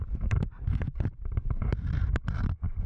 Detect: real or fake fake